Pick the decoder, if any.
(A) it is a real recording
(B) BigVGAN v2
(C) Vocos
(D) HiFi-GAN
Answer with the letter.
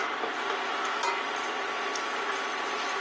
A